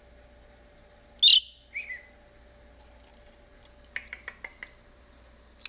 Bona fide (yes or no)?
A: yes